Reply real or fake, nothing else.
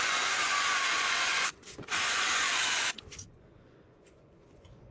fake